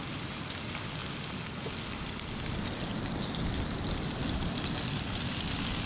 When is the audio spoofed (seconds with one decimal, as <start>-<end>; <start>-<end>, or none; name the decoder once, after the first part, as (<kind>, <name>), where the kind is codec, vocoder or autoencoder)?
1.0-4.5 (vocoder, BigVGAN v2)